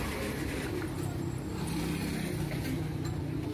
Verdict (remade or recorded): recorded